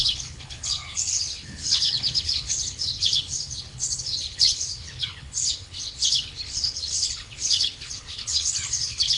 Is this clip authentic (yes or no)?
no